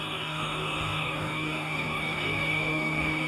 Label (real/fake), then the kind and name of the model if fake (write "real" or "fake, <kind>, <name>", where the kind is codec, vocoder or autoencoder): fake, codec, DAC